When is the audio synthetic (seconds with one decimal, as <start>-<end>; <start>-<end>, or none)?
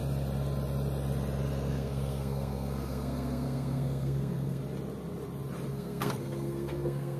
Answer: 1.7-4.6; 5.7-7.2